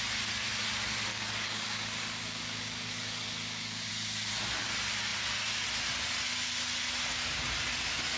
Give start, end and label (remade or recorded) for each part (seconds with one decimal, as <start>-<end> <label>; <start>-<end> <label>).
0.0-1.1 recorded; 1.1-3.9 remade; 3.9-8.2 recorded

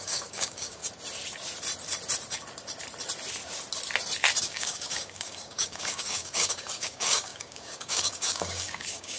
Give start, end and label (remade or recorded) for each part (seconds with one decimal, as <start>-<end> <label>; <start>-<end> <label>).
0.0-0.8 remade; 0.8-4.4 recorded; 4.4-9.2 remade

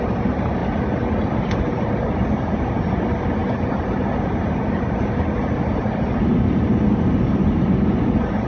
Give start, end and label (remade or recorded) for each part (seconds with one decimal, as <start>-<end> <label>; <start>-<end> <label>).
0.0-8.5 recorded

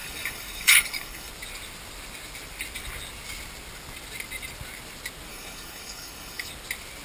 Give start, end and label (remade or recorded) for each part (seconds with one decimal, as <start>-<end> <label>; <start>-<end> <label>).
0.0-1.3 remade; 1.3-5.3 recorded; 5.3-6.5 remade; 6.5-7.0 recorded

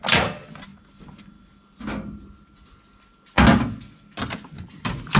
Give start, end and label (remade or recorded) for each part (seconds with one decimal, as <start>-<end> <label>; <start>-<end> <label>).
0.0-5.2 recorded

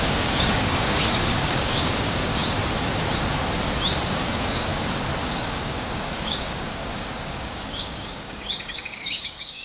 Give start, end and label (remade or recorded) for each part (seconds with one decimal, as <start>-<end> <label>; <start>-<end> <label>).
0.0-2.3 remade; 2.3-4.1 recorded; 4.1-4.7 remade; 4.7-5.2 recorded; 5.2-9.6 remade

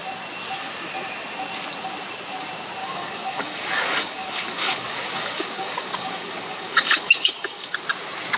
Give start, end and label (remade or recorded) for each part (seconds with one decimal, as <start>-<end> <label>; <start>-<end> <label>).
0.0-2.8 recorded; 2.8-7.8 remade; 7.8-8.4 recorded

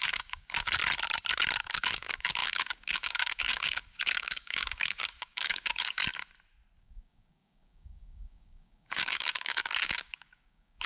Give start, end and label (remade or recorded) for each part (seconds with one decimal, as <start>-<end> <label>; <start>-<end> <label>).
0.0-0.8 remade; 0.8-1.6 recorded; 1.6-6.0 remade; 6.0-6.8 recorded; 6.8-10.9 remade